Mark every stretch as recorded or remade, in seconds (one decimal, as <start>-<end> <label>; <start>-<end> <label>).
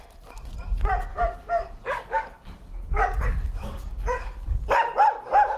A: 0.0-1.1 recorded; 1.1-4.5 remade; 4.5-5.6 recorded